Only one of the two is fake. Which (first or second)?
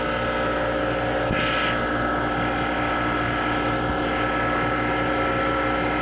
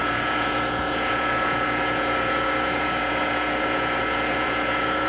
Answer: second